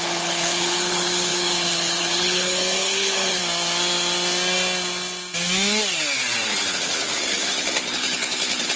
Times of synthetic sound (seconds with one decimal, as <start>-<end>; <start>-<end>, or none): 0.0-3.4; 6.5-8.8